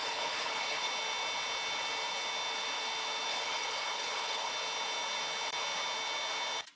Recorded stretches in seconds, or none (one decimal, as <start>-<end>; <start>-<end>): 0.9-3.3; 4.5-6.8